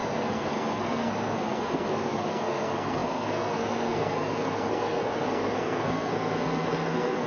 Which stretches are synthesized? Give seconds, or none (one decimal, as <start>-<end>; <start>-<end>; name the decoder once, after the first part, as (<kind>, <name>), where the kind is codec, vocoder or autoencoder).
0.0-7.3 (codec, SNAC)